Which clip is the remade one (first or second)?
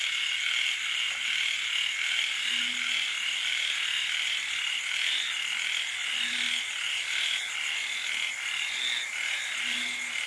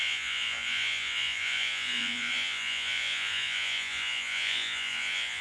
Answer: second